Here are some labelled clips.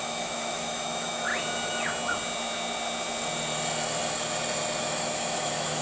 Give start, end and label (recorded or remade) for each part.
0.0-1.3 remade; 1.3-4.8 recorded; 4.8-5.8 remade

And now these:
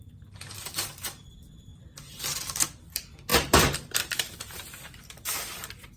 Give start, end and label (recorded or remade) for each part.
0.0-1.7 remade; 1.7-2.5 recorded; 2.5-6.0 remade